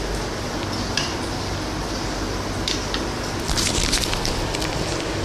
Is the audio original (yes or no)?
yes